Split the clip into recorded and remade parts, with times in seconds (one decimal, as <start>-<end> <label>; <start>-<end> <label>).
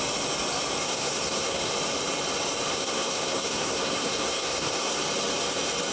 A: 0.0-0.8 recorded; 0.8-1.7 remade; 1.7-2.7 recorded; 2.7-5.0 remade; 5.0-5.9 recorded